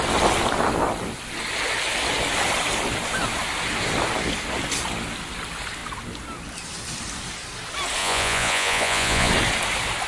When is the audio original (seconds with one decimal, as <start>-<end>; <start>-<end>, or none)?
0.0-8.0; 9.3-10.1